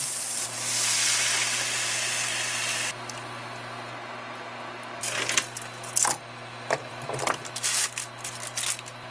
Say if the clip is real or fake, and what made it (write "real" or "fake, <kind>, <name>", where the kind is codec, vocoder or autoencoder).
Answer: real